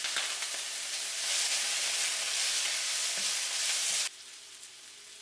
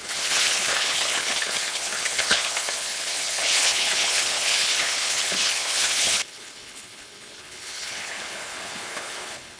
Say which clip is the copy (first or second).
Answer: second